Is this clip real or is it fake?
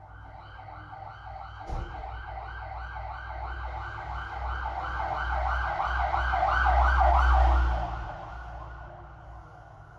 real